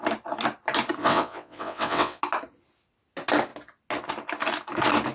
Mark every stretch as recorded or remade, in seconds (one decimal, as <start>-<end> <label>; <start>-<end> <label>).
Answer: 0.0-1.0 recorded; 1.0-2.2 remade; 2.2-5.1 recorded